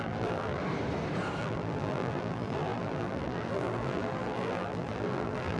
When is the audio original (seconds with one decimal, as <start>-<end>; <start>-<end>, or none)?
0.6-1.4